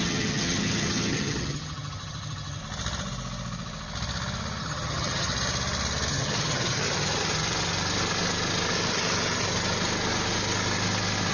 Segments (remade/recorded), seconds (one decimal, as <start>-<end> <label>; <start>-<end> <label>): 0.0-2.6 remade; 2.6-4.6 recorded; 4.6-5.3 remade; 5.3-6.1 recorded; 6.1-6.8 remade; 6.8-11.3 recorded